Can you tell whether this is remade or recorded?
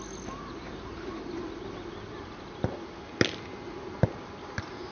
recorded